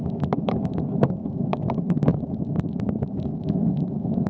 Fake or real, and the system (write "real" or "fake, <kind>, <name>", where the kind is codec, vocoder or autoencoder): fake, autoencoder, DAC-VAE